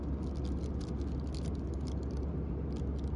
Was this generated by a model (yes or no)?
no